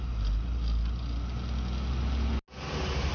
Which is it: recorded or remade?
recorded